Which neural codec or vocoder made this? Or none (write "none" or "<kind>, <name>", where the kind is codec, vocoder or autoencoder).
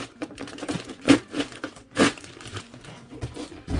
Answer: vocoder, Vocos